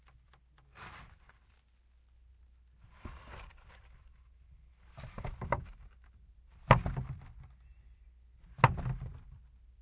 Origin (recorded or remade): recorded